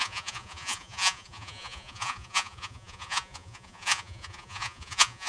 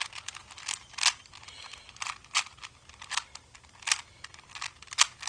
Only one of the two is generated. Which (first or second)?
first